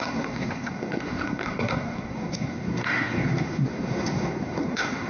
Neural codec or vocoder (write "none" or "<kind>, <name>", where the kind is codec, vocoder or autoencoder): codec, SNAC